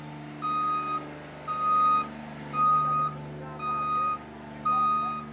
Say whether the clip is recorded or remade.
recorded